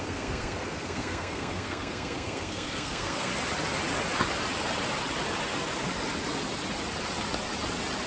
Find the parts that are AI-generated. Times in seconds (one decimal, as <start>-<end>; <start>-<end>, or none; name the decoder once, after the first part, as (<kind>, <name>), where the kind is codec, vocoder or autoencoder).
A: 0.0-3.3 (codec, SNAC)